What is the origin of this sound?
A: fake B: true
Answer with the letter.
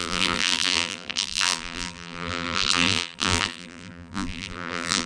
A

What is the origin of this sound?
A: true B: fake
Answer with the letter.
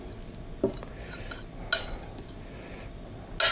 A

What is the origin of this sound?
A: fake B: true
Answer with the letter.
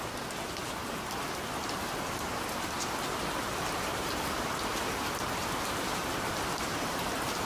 B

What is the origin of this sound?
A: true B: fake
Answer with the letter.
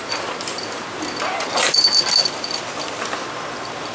A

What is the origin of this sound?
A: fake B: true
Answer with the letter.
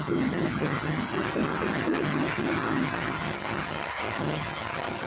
A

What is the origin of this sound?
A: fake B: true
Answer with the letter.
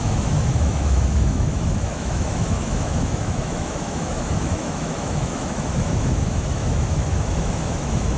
A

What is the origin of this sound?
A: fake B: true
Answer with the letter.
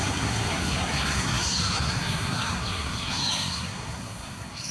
A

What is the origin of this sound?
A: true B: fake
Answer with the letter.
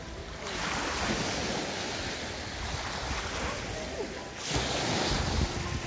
A